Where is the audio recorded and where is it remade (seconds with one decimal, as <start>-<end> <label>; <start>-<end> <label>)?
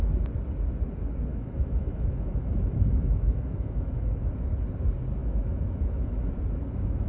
0.0-1.3 recorded; 1.3-4.3 remade; 4.3-5.2 recorded; 5.2-6.3 remade; 6.3-7.1 recorded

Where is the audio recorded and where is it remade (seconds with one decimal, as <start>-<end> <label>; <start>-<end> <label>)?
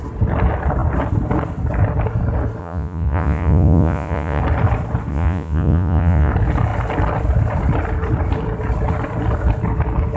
0.0-2.6 recorded; 2.6-4.4 remade; 4.4-5.1 recorded; 5.1-6.3 remade; 6.3-10.2 recorded